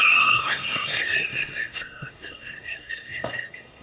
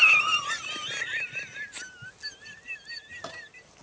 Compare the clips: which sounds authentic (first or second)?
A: second